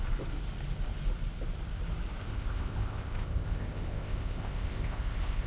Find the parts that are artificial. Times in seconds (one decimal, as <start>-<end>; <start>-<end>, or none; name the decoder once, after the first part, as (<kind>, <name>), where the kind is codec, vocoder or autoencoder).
2.2-5.5 (codec, ZipCodec)